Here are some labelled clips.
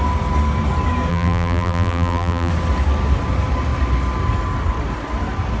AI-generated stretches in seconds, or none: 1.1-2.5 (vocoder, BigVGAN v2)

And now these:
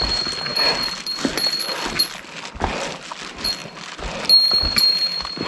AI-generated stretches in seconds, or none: none